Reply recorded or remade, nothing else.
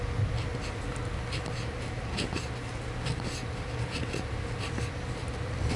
recorded